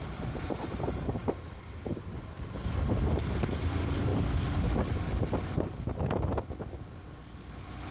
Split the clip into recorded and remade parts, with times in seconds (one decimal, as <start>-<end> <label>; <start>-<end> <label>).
0.0-7.9 recorded